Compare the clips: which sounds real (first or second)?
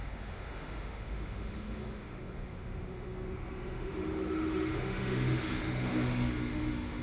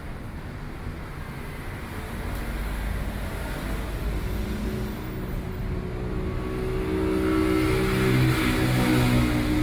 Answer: second